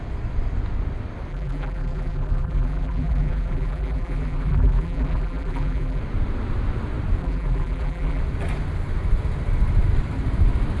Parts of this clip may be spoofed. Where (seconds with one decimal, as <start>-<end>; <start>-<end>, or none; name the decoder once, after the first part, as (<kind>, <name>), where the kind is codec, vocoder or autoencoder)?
1.3-6.0 (vocoder, BigVGAN v2); 7.2-8.2